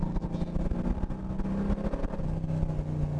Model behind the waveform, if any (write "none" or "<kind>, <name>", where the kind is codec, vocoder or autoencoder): none